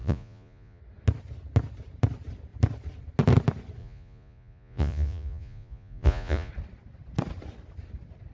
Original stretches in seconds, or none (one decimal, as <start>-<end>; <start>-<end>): 0.8-3.8; 6.5-8.3